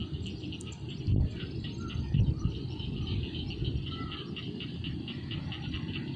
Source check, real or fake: real